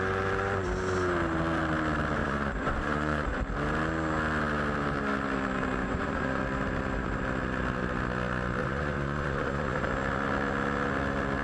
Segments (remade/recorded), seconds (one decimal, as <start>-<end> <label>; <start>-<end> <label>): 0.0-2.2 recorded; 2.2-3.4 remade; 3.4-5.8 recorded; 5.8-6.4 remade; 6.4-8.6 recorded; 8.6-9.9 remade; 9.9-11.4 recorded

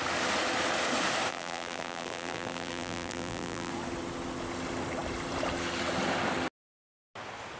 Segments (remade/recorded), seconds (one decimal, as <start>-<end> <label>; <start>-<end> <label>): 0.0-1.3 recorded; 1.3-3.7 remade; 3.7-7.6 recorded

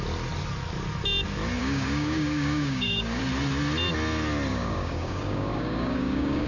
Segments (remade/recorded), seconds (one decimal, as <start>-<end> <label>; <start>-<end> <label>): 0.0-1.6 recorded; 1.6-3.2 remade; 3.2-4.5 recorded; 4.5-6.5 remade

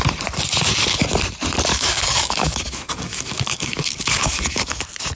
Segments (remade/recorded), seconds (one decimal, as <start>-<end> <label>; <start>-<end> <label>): 0.0-1.7 recorded; 1.7-4.8 remade; 4.8-5.2 recorded

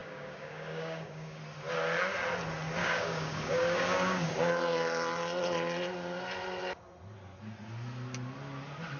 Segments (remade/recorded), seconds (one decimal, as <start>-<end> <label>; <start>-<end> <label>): 0.0-1.4 remade; 1.4-2.8 recorded; 2.8-4.3 remade; 4.3-9.0 recorded

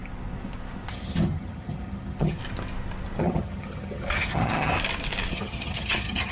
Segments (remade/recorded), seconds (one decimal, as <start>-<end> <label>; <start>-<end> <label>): 0.0-0.9 recorded; 0.9-2.4 remade; 2.4-3.2 recorded; 3.2-4.7 remade; 4.7-5.3 recorded; 5.3-6.3 remade

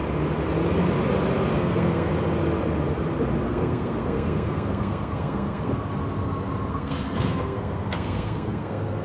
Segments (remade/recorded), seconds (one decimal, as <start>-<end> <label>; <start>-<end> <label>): 0.0-1.5 recorded; 1.5-2.1 remade; 2.1-3.5 recorded; 3.5-5.7 remade; 5.7-6.7 recorded; 6.7-9.0 remade

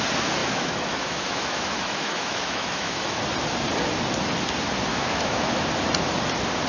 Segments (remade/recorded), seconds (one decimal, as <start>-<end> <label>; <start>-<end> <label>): 0.0-0.4 recorded; 0.4-3.2 remade; 3.2-4.9 recorded; 4.9-5.5 remade; 5.5-6.7 recorded